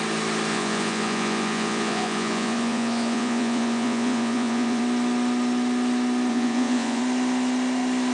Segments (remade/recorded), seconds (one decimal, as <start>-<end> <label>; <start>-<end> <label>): 0.0-0.5 recorded; 0.5-4.8 remade; 4.8-6.3 recorded; 6.3-7.0 remade; 7.0-8.1 recorded